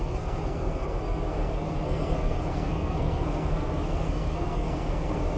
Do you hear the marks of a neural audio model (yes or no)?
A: yes